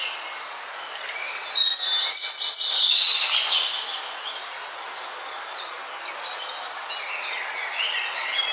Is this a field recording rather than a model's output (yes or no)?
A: yes